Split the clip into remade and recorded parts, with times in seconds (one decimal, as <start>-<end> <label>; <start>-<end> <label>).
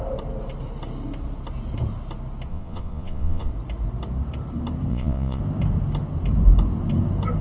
0.0-2.5 recorded; 2.5-3.5 remade; 3.5-4.9 recorded; 4.9-5.4 remade; 5.4-7.4 recorded